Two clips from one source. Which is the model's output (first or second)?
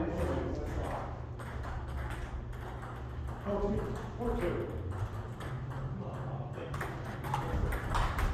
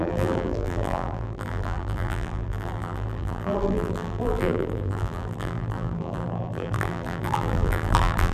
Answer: second